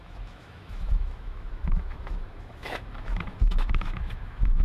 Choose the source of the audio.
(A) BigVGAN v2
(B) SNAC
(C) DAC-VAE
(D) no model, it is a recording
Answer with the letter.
C